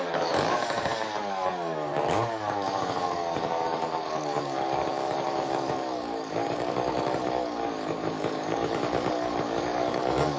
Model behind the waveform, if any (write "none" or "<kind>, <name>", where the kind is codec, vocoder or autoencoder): codec, DAC